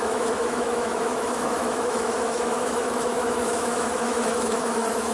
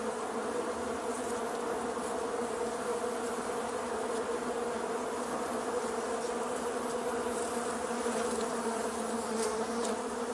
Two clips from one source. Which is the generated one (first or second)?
first